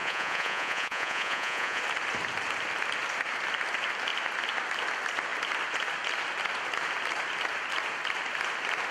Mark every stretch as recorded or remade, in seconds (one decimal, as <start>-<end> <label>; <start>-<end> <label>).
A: 0.0-1.8 remade; 1.8-8.9 recorded